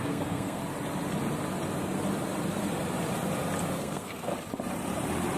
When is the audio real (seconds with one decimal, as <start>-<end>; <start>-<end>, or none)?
0.6-3.8; 4.3-5.4